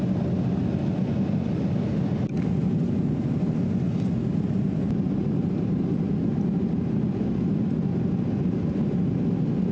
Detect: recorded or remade recorded